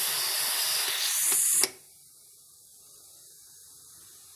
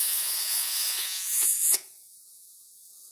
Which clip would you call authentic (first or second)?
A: first